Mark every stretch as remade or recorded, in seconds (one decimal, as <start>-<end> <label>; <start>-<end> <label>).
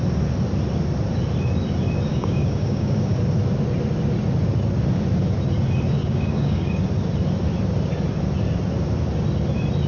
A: 0.0-2.1 recorded; 2.1-3.1 remade; 3.1-6.0 recorded; 6.0-6.8 remade; 6.8-9.9 recorded